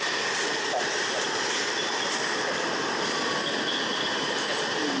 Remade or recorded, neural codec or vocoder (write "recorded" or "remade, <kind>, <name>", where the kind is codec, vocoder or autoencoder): recorded